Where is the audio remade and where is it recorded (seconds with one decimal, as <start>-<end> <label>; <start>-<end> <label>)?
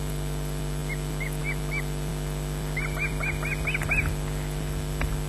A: 0.0-5.3 recorded